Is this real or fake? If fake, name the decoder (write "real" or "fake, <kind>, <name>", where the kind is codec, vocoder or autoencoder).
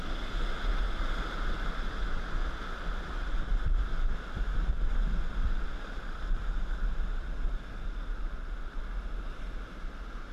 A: real